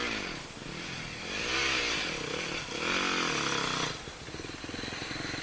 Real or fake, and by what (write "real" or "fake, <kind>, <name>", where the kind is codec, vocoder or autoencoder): real